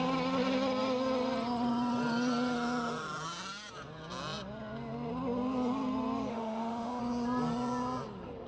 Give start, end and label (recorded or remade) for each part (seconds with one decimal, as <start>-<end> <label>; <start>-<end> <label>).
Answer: 0.0-6.3 recorded; 6.3-7.0 remade; 7.0-8.5 recorded